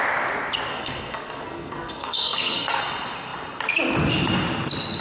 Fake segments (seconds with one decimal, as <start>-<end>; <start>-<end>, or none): 0.7-2.8